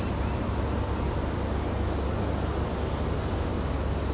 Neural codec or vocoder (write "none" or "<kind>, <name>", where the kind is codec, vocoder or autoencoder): none